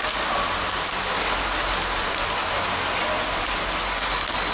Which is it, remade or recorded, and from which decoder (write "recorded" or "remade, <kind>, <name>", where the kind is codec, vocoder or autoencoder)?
recorded